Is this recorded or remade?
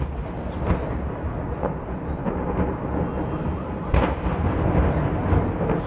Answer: recorded